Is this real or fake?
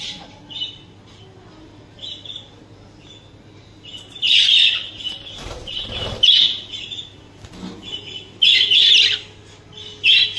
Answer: real